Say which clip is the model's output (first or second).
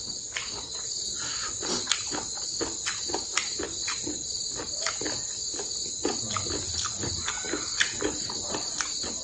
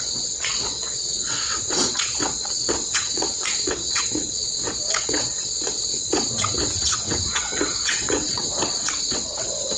second